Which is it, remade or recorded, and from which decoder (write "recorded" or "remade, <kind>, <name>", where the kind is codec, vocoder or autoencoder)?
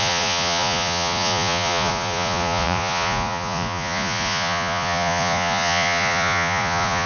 remade, vocoder, Vocos